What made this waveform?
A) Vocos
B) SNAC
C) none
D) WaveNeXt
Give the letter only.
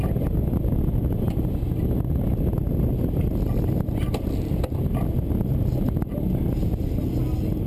C